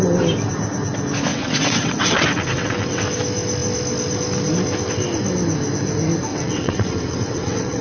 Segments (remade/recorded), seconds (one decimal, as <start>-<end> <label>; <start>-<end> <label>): 0.0-1.3 recorded; 1.3-3.0 remade; 3.0-6.3 recorded; 6.3-7.8 remade